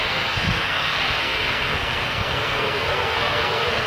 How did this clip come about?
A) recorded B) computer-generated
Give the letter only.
B